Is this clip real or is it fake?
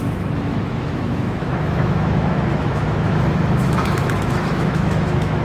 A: fake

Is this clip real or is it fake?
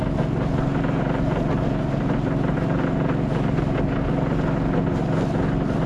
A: real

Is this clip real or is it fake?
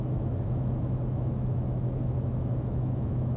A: fake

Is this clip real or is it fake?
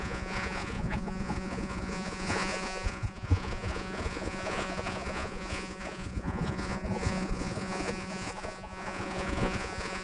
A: fake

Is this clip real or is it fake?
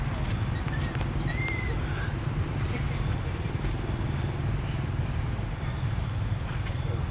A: real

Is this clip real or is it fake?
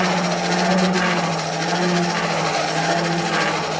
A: real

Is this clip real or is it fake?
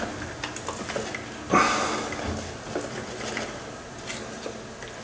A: real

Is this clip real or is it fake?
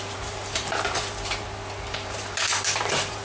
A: fake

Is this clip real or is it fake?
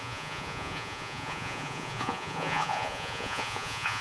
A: fake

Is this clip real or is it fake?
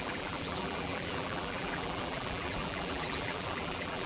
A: fake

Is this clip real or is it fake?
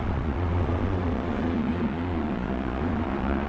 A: fake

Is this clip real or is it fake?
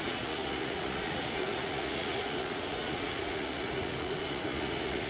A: fake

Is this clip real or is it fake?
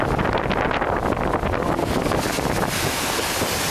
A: real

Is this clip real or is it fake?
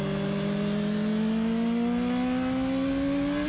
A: real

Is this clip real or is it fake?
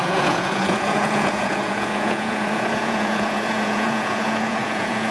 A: fake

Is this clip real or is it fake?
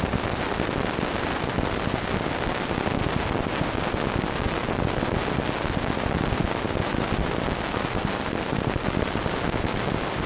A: real